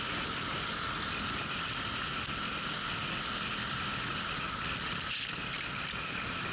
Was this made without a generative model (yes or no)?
yes